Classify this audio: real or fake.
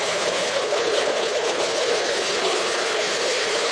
fake